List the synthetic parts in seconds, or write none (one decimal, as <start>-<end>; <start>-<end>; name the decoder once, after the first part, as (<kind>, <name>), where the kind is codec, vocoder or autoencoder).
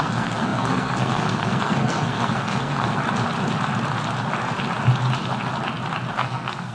0.0-3.0 (codec, SNAC); 6.1-6.7